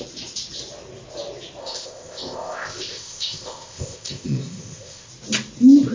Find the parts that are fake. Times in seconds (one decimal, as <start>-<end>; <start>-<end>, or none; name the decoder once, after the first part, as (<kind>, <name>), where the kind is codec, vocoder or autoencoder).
1.6-5.1 (codec, ZipCodec)